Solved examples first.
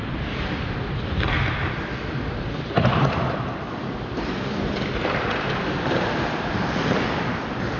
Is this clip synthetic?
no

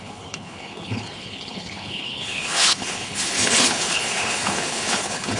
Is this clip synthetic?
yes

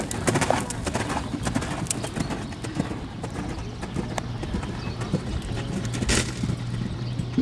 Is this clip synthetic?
no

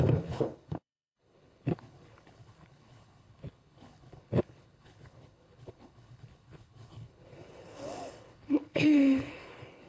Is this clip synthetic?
yes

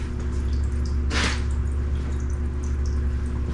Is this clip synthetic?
no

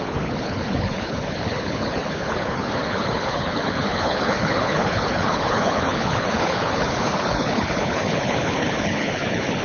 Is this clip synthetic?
yes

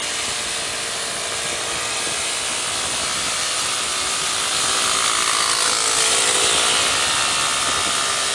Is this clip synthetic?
no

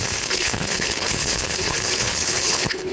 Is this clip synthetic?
yes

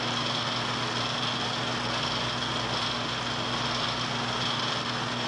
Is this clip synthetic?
no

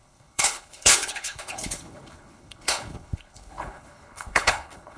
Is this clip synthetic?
yes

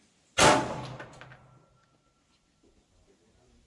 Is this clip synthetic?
no